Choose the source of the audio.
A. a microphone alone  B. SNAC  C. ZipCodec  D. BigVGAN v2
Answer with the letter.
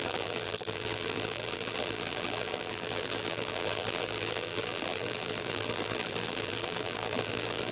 D